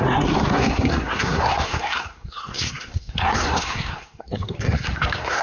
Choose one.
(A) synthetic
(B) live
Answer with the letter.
A